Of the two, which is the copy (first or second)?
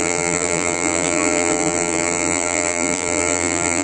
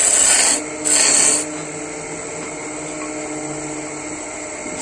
first